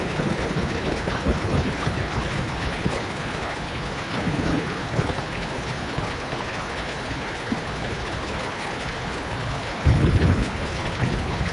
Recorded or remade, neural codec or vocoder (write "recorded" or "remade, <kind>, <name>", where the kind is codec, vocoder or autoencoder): remade, codec, HILCodec